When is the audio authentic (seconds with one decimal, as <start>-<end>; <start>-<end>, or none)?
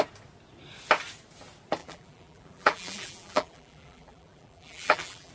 0.0-1.8